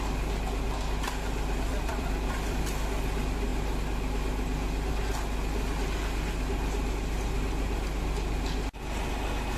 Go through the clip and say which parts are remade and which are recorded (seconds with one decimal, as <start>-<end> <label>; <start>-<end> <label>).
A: 0.0-1.7 recorded; 1.7-2.6 remade; 2.6-9.6 recorded